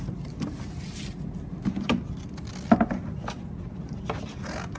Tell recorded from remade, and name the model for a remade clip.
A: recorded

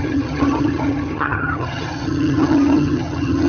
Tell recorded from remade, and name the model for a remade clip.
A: remade, vocoder, HiFi-GAN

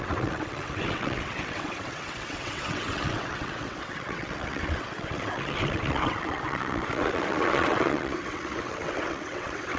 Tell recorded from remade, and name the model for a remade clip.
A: remade, vocoder, WaveNeXt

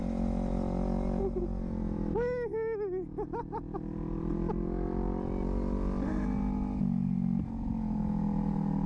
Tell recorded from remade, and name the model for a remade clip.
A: recorded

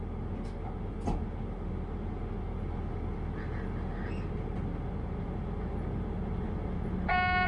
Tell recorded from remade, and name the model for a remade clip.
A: recorded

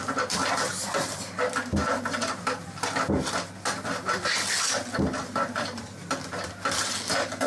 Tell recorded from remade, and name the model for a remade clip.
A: recorded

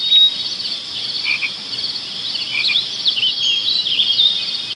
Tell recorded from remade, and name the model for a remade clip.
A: recorded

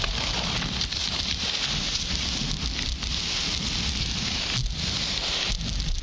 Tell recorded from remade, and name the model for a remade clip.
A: recorded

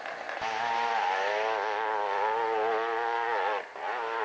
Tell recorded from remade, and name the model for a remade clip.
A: recorded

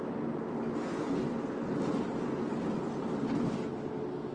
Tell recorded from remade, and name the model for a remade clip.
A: recorded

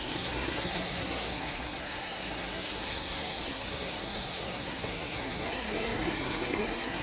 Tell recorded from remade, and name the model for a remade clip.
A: remade, codec, SNAC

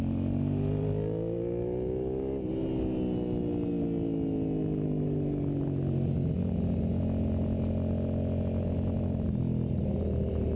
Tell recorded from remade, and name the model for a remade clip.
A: recorded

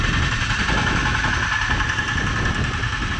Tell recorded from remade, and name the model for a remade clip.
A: recorded